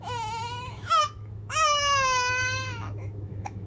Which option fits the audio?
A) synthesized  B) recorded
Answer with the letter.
A